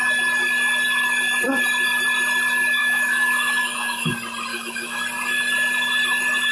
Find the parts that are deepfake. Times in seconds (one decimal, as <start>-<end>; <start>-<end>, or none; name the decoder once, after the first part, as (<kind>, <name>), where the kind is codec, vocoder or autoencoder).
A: 2.8-4.1 (autoencoder, DAC-VAE); 4.5-5.0